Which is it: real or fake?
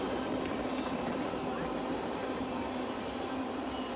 real